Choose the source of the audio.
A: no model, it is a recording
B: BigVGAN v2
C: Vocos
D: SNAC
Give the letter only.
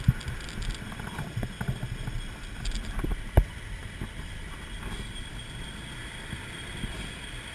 A